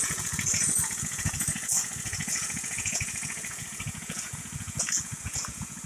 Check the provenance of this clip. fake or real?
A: fake